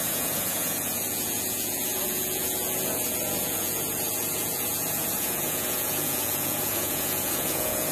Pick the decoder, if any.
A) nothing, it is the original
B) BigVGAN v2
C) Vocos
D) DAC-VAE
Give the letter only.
C